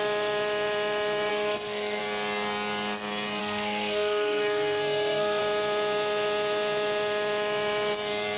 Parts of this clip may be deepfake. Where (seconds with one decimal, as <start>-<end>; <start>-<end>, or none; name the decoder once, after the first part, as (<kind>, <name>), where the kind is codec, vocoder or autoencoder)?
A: 1.3-2.0 (codec, SNAC); 3.4-5.4